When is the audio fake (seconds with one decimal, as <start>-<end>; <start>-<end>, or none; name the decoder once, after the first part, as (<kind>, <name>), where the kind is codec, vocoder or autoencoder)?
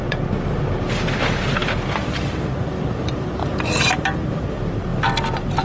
0.0-3.4 (vocoder, BigVGAN v2); 3.9-5.6